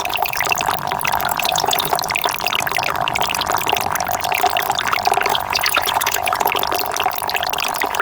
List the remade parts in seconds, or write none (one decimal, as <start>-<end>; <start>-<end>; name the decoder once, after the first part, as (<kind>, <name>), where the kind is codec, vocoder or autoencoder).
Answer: 1.3-1.9 (vocoder, Vocos); 5.3-6.5

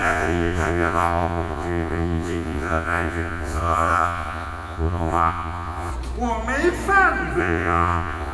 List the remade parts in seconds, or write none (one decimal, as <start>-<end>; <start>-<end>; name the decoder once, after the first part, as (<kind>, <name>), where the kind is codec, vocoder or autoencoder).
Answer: 0.0-5.9 (vocoder, Vocos); 7.4-8.3

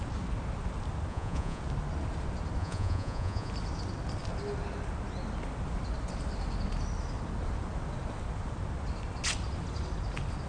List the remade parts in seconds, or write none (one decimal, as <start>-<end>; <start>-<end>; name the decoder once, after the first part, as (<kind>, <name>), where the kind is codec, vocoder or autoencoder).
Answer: 1.1-1.6 (vocoder, Vocos); 2.6-3.5

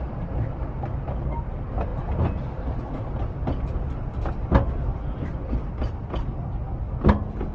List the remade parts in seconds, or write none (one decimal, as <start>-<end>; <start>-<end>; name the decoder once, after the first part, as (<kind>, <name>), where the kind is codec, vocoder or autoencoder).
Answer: none

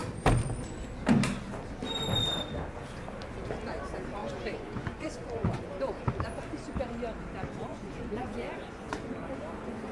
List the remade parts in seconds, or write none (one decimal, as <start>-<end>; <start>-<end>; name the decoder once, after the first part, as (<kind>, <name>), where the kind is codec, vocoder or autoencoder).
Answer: 4.2-5.7 (vocoder, Vocos); 7.7-9.1

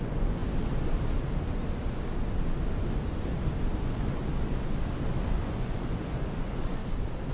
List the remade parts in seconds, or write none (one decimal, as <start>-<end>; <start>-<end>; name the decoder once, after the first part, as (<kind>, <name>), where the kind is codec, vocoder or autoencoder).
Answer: 0.0-0.4 (vocoder, Vocos); 3.8-4.2; 5.4-6.8

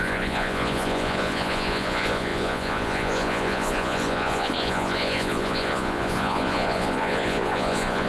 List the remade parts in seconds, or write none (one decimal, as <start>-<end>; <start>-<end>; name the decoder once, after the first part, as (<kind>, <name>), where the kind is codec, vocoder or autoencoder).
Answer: 0.0-8.1 (vocoder, Vocos)

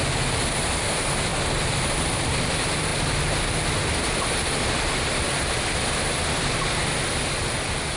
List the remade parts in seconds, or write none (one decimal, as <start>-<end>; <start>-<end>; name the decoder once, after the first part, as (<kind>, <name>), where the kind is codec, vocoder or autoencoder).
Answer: none